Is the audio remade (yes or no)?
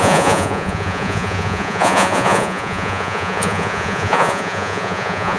yes